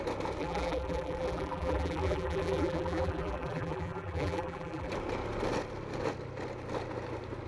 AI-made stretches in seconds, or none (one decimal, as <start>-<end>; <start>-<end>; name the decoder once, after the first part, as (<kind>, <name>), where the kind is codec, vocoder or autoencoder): 0.4-4.9 (vocoder, BigVGAN v2)